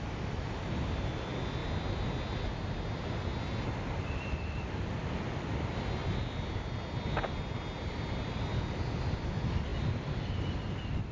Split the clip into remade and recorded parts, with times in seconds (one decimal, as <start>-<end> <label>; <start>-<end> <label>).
0.0-11.1 recorded